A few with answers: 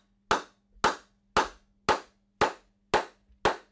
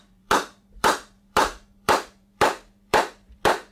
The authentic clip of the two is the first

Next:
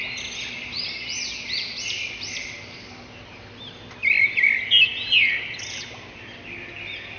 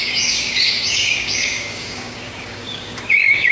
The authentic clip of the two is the first